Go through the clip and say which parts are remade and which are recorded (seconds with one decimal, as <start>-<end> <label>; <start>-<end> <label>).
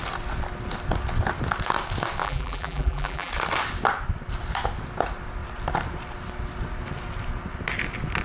0.0-2.2 recorded; 2.2-3.3 remade; 3.3-8.2 recorded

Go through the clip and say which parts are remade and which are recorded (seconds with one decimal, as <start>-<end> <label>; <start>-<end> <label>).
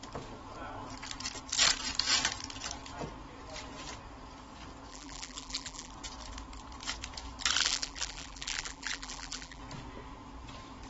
0.0-4.9 recorded; 4.9-5.9 remade; 5.9-7.6 recorded; 7.6-9.6 remade; 9.6-10.9 recorded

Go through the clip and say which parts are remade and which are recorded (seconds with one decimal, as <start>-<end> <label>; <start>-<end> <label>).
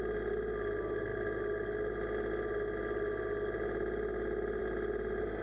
0.0-5.4 recorded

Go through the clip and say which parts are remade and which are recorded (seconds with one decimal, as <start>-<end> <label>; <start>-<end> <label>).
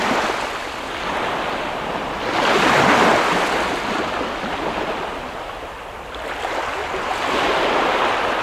0.0-6.8 recorded; 6.8-7.9 remade; 7.9-8.4 recorded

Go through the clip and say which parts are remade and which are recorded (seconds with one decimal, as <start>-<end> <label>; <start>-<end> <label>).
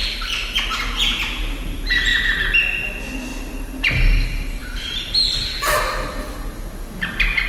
0.0-2.1 recorded; 2.1-2.6 remade; 2.6-4.6 recorded; 4.6-5.6 remade; 5.6-7.5 recorded